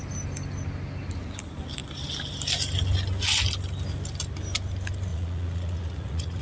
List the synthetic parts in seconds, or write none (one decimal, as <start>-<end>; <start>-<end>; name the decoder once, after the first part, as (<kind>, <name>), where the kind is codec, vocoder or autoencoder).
5.1-6.4 (vocoder, Vocos)